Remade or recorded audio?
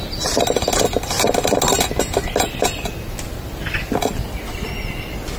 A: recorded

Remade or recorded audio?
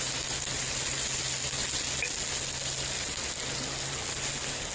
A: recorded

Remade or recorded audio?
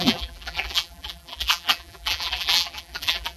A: remade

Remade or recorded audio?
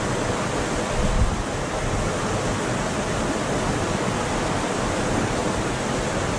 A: recorded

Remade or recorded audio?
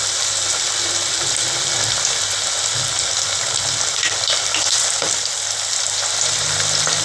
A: recorded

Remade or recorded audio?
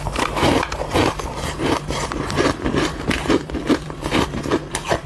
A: remade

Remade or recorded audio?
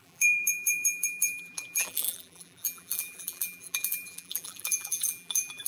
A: remade